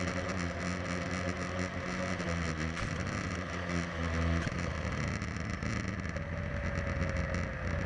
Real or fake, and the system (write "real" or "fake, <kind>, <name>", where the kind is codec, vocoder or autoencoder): real